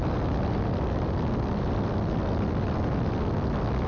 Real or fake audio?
real